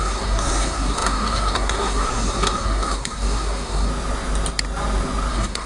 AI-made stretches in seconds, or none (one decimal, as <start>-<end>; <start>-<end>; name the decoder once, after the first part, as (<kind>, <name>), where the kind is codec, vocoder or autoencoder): 0.0-3.9 (codec, SNAC); 5.3-5.7